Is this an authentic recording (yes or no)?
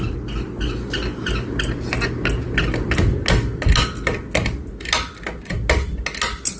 yes